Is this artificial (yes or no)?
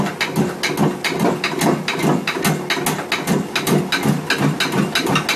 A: no